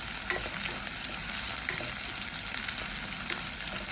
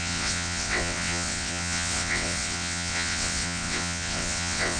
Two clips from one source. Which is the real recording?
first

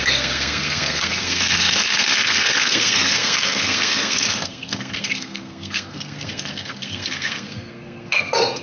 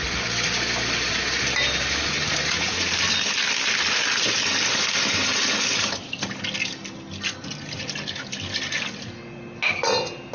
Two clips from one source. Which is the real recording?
second